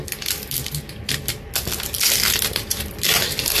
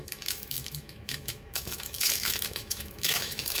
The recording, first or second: first